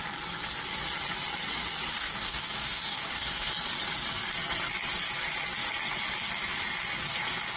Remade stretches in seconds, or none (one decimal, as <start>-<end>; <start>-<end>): 1.9-3.5